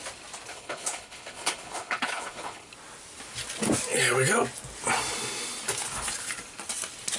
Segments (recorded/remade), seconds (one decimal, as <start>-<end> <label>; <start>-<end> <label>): 0.0-0.5 recorded; 0.5-2.7 remade; 2.7-7.2 recorded